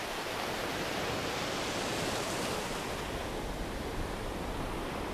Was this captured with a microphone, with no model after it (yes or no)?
yes